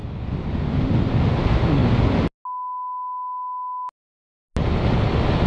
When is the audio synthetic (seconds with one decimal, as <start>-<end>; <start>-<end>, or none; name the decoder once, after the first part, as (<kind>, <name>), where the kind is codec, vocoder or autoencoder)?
none